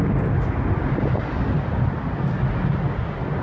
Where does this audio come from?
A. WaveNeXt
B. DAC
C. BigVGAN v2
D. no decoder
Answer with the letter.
D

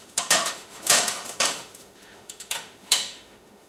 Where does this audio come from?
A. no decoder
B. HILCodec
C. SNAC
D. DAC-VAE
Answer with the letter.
D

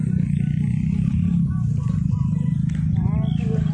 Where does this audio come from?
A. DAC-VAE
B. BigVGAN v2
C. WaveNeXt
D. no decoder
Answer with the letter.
D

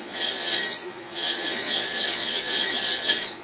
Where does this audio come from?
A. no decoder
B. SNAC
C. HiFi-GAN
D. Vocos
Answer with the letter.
D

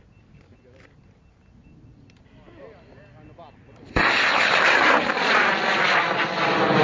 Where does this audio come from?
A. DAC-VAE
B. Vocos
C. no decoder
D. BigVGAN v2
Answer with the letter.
C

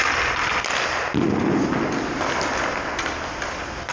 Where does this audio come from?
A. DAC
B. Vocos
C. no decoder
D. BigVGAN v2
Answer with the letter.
C